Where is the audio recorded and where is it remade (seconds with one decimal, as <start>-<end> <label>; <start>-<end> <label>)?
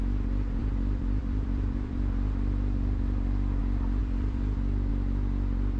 0.0-0.6 recorded; 0.6-3.6 remade; 3.6-4.0 recorded; 4.0-4.9 remade; 4.9-5.8 recorded